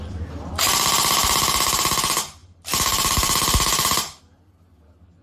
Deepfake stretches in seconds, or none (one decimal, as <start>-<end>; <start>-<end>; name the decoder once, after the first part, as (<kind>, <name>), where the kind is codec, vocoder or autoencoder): 2.4-4.2 (vocoder, BigVGAN v2)